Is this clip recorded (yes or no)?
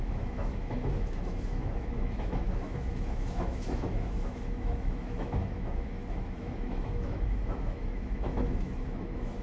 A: no